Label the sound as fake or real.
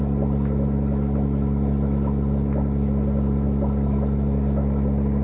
real